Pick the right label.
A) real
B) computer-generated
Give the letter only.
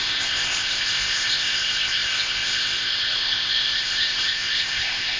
B